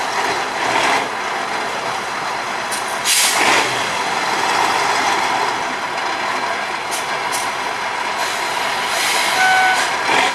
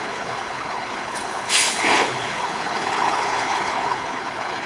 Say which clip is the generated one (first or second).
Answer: second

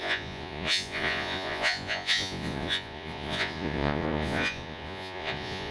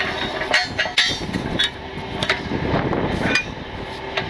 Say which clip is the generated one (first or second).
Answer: first